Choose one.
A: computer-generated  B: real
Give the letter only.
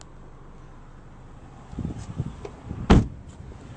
B